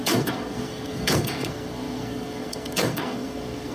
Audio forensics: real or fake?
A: fake